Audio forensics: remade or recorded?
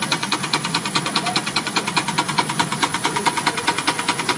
remade